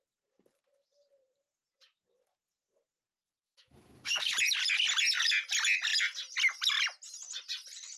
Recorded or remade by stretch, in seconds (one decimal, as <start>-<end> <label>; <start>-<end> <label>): 0.0-3.2 recorded; 3.2-4.3 remade; 4.3-8.0 recorded